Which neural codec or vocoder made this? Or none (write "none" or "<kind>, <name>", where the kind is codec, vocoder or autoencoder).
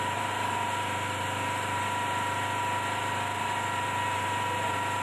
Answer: vocoder, BigVGAN v2